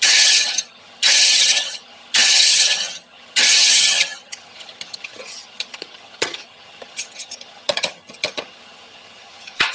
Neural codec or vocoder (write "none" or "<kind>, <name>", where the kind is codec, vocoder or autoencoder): vocoder, HiFi-GAN